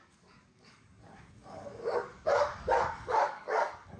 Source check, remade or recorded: remade